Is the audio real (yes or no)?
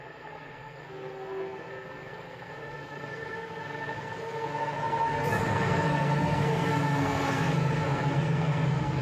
no